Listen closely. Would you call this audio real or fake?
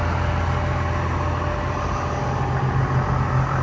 real